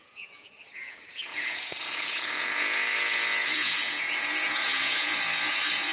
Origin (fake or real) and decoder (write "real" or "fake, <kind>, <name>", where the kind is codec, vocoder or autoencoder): fake, vocoder, Vocos